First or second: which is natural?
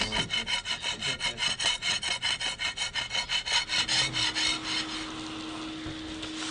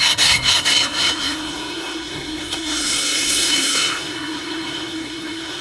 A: first